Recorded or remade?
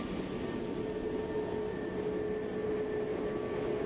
recorded